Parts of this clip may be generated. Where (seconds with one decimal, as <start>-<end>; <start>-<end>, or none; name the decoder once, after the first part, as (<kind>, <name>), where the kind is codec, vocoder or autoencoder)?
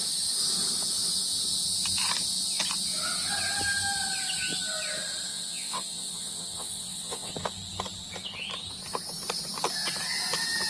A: 5.3-7.3 (vocoder, WaveNeXt)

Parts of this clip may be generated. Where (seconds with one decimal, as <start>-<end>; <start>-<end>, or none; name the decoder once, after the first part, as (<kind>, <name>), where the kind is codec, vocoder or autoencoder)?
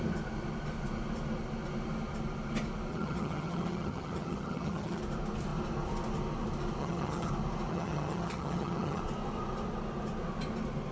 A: 2.9-5.0 (vocoder, HiFi-GAN); 6.8-7.3; 7.7-9.0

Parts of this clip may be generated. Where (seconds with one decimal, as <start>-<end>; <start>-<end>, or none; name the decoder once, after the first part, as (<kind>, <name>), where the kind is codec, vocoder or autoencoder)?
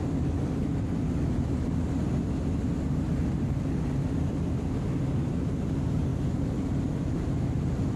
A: none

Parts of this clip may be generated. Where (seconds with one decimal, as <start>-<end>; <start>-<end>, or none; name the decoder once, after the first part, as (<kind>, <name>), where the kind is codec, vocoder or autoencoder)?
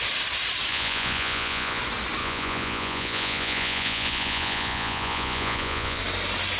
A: 0.7-1.8 (vocoder, Vocos); 2.2-6.0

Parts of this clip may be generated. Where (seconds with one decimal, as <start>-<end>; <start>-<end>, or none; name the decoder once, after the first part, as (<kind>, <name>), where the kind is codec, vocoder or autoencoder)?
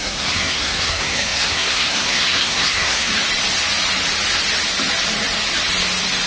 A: 0.0-3.1 (codec, SNAC)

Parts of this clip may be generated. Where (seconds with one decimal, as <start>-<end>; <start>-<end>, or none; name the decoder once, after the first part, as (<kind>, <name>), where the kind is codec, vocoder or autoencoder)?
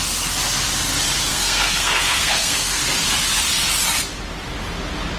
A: 1.3-2.8 (codec, SNAC)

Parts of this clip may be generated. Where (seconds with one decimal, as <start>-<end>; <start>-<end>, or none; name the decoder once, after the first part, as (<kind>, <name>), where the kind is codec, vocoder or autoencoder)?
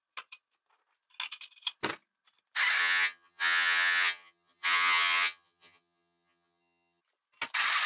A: 2.8-7.0 (vocoder, HiFi-GAN)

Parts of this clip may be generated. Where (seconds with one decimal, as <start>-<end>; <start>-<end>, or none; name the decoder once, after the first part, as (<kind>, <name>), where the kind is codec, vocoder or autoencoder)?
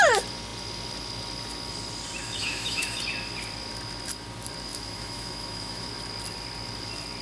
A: 2.4-3.0 (autoencoder, DAC-VAE); 4.7-5.9